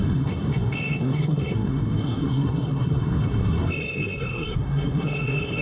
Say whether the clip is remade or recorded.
remade